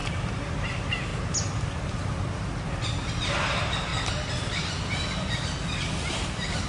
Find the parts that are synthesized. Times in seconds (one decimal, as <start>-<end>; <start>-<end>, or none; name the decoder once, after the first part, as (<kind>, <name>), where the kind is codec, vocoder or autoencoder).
0.5-1.1 (vocoder, BigVGAN v2); 3.1-3.9; 6.1-6.7